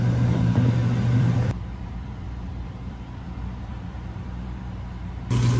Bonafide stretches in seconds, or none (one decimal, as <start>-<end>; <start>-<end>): 0.0-1.2; 4.6-5.6